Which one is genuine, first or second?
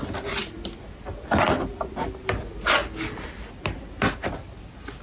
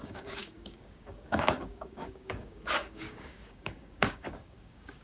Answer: first